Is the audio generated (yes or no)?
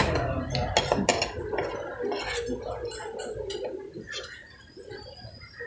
no